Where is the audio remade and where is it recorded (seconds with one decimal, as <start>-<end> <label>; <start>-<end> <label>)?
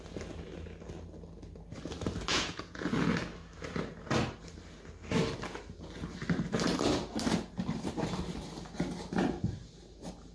0.0-2.3 recorded; 2.3-3.1 remade; 3.1-10.3 recorded